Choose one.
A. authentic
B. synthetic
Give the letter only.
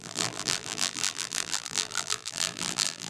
B